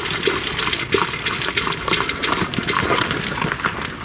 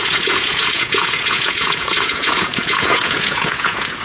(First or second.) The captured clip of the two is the first